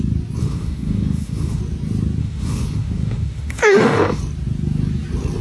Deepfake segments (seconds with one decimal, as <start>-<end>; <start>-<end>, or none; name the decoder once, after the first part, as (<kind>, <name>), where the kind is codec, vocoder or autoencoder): 0.4-1.6 (autoencoder, DAC-VAE); 2.2-4.2